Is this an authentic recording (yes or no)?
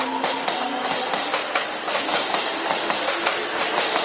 yes